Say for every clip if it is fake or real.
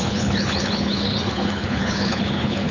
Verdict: fake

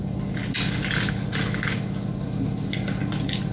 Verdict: real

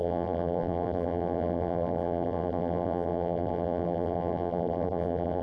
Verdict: fake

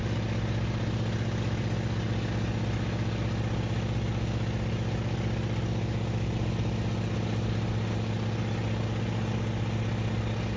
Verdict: real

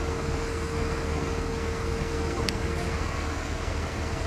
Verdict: fake